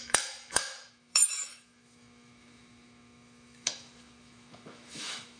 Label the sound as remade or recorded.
remade